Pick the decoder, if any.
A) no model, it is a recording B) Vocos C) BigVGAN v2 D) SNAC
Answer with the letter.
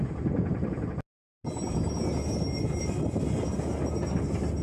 A